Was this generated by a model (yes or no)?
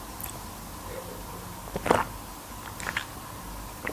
no